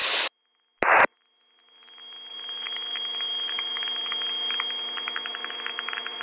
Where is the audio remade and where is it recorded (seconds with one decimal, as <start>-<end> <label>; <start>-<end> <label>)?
0.0-2.3 recorded; 2.3-4.0 remade; 4.0-5.3 recorded; 5.3-6.2 remade